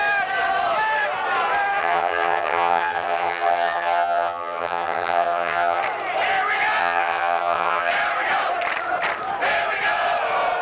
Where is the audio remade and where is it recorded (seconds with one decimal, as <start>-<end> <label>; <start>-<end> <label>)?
0.0-1.8 recorded; 1.8-5.8 remade; 5.8-6.8 recorded; 6.8-7.9 remade; 7.9-10.6 recorded